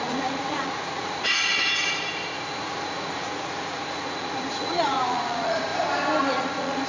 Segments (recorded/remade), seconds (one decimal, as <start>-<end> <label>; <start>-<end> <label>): 0.0-1.5 remade; 1.5-2.3 recorded; 2.3-5.7 remade; 5.7-6.2 recorded; 6.2-6.9 remade